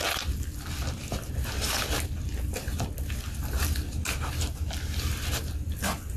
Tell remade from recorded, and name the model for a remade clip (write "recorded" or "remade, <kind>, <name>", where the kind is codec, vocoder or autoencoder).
recorded